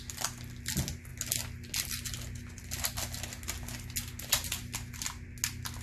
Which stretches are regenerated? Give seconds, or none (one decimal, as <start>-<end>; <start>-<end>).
none